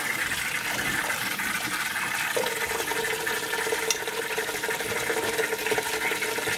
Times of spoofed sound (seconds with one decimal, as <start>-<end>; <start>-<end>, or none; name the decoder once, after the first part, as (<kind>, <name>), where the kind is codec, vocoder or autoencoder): none